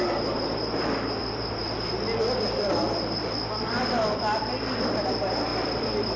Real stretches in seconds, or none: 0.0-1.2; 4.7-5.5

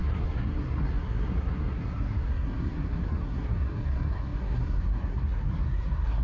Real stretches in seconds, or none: none

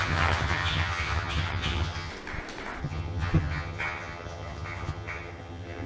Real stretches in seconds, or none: 2.1-2.8

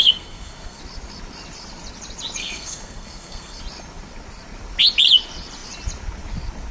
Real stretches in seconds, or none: 0.8-2.4; 3.6-6.7

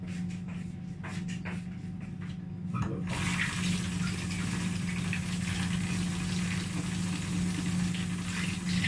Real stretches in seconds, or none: 0.0-8.9

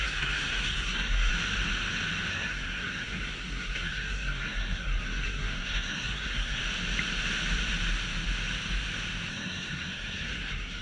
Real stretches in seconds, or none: 1.3-2.3; 6.6-9.3

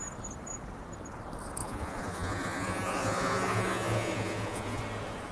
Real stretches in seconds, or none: 0.0-1.6; 4.8-5.3